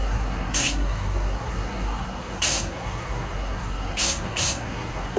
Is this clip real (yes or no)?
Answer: no